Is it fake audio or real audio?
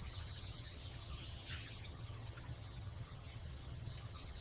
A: fake